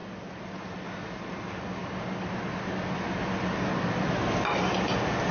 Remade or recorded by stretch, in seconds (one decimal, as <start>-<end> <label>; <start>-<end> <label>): 0.0-5.3 recorded